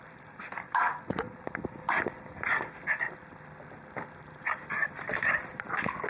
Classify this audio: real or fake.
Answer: real